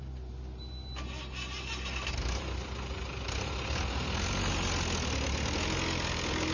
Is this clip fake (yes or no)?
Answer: no